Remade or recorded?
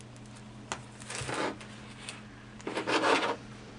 recorded